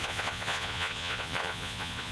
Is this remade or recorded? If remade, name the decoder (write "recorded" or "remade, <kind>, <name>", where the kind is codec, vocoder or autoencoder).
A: remade, vocoder, Vocos